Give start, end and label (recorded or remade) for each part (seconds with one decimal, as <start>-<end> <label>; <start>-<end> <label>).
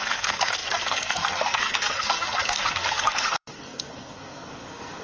0.0-5.0 remade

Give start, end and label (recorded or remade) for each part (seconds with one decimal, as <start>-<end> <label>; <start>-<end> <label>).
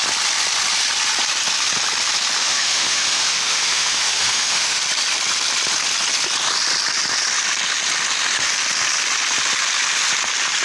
0.0-2.4 recorded; 2.4-4.8 remade; 4.8-10.6 recorded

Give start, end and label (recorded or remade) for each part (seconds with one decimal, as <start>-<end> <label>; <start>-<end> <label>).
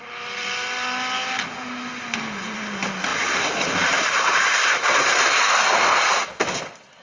0.0-3.1 recorded; 3.1-5.4 remade; 5.4-7.0 recorded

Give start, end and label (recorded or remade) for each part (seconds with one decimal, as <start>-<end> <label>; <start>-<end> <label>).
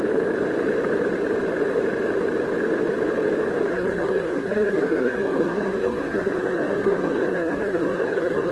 0.0-3.7 recorded; 3.7-8.5 remade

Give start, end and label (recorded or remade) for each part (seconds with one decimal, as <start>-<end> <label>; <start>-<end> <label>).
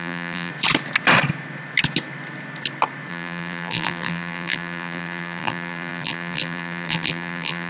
0.0-0.5 remade; 0.5-3.1 recorded; 3.1-7.7 remade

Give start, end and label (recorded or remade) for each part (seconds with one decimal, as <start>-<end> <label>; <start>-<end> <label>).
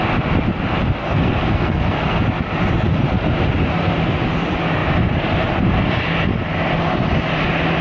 0.0-1.0 recorded; 1.0-2.2 remade; 2.2-7.8 recorded